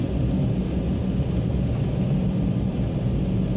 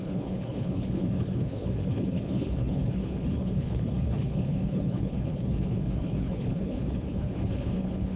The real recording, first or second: first